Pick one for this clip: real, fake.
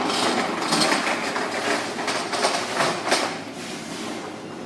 real